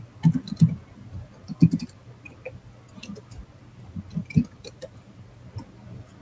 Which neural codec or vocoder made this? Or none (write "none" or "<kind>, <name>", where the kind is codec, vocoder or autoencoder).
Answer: none